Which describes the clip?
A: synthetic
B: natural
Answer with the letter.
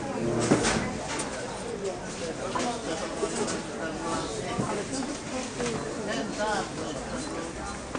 B